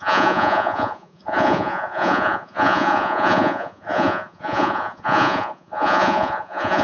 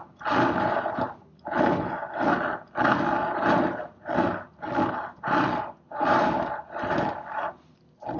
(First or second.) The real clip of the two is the second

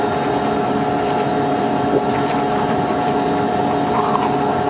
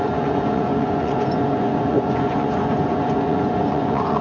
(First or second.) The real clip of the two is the first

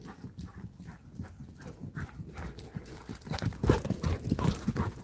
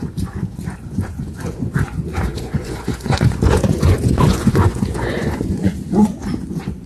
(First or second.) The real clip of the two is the first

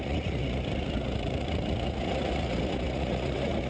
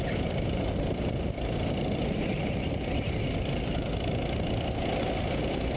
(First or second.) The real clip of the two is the second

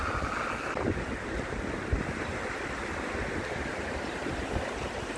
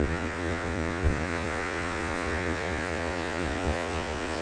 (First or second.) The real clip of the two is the first